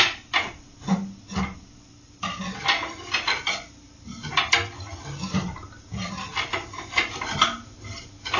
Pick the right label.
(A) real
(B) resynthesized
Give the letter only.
A